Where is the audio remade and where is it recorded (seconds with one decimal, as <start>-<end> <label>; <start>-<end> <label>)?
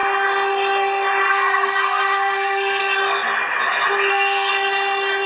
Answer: 0.0-1.3 recorded; 1.3-2.8 remade; 2.8-4.1 recorded; 4.1-4.5 remade; 4.5-5.3 recorded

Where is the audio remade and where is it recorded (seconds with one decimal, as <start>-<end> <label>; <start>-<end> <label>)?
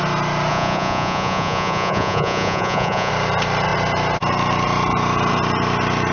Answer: 0.0-0.5 recorded; 0.5-3.1 remade; 3.1-6.1 recorded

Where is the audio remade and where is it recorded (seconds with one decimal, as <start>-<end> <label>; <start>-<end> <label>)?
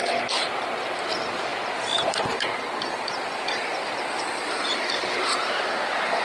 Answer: 0.0-6.2 recorded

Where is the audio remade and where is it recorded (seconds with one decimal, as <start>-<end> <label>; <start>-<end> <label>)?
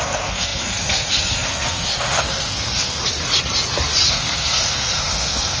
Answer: 0.0-3.0 remade; 3.0-4.1 recorded; 4.1-5.6 remade